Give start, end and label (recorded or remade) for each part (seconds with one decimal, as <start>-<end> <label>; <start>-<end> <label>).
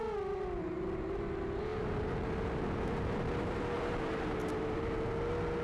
0.0-1.7 recorded; 1.7-5.1 remade; 5.1-5.6 recorded